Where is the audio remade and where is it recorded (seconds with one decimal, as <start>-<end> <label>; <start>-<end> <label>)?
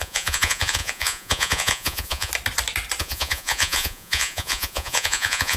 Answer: 0.0-2.3 remade; 2.3-3.0 recorded; 3.0-5.6 remade